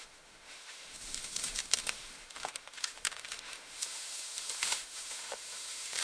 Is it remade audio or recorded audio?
remade